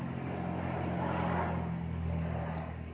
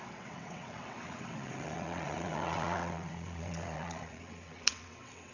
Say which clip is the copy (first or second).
second